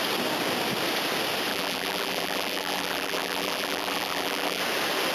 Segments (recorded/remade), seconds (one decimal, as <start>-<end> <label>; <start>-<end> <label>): 0.0-1.5 recorded; 1.5-4.6 remade; 4.6-5.1 recorded